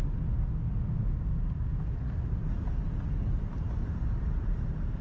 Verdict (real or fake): real